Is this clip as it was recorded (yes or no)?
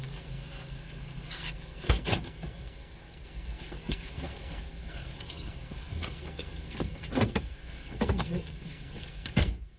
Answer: no